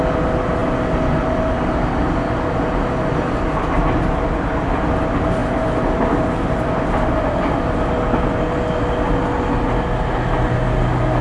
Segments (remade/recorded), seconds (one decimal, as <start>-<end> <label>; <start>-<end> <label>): 0.0-11.2 recorded